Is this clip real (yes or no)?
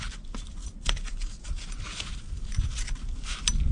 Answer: yes